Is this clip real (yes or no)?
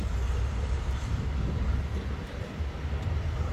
no